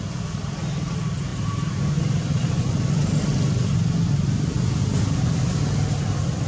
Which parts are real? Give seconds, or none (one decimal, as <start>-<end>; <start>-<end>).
0.0-6.5